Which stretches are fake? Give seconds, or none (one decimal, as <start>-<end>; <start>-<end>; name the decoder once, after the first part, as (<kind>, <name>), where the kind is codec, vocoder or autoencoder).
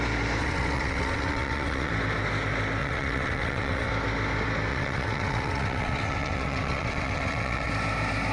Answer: 0.4-1.9 (vocoder, WaveNeXt); 2.8-3.9; 4.7-7.7